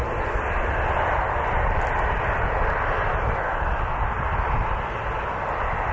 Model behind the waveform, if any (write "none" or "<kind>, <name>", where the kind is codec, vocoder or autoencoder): none